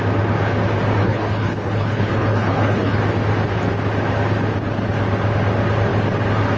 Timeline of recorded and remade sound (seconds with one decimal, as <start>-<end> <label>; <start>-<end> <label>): 0.0-1.0 recorded; 1.0-3.0 remade; 3.0-6.6 recorded